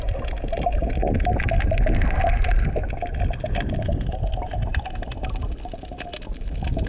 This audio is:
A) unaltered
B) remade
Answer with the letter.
A